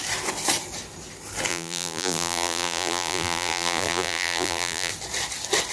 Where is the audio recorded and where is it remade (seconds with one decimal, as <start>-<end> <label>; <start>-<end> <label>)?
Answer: 0.0-1.5 recorded; 1.5-4.9 remade; 4.9-5.7 recorded